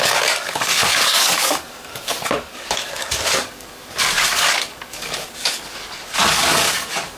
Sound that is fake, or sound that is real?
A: fake